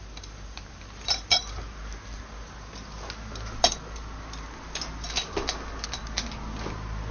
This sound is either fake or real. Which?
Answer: real